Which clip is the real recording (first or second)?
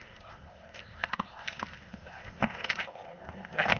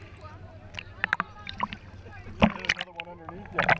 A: second